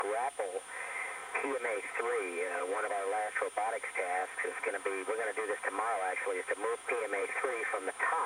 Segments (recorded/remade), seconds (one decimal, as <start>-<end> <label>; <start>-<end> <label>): 0.0-1.2 recorded; 1.2-2.9 remade; 2.9-4.2 recorded; 4.2-4.7 remade; 4.7-6.8 recorded; 6.8-7.9 remade; 7.9-8.3 recorded